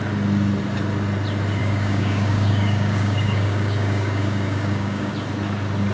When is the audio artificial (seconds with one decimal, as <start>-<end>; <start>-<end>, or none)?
1.6-5.1